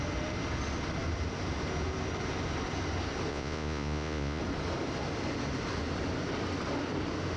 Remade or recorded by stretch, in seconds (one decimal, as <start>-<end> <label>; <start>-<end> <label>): 0.0-3.3 recorded; 3.3-4.4 remade; 4.4-7.4 recorded